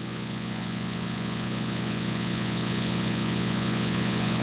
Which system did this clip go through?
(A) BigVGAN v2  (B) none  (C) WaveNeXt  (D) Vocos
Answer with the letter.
D